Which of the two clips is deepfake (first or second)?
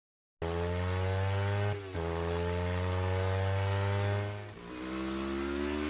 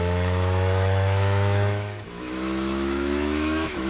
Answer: second